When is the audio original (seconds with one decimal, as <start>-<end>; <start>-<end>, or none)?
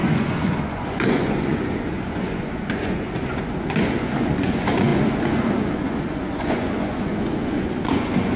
none